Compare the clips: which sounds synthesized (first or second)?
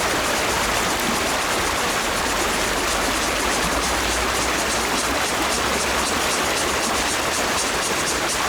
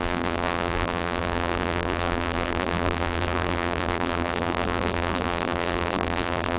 second